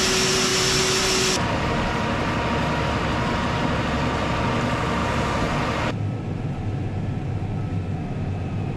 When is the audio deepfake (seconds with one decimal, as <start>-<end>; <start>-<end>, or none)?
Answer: none